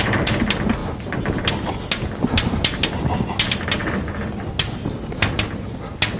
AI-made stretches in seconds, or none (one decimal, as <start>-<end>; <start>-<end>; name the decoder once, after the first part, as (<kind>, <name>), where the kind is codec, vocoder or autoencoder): none